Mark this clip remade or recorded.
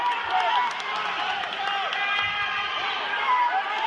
recorded